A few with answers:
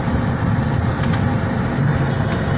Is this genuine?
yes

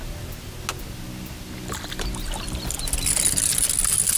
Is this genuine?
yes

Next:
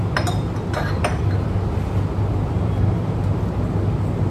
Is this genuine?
yes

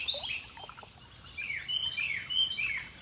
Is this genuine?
yes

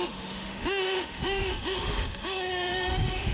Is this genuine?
no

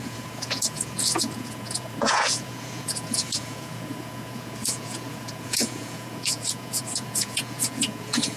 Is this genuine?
no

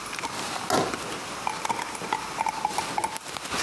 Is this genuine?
yes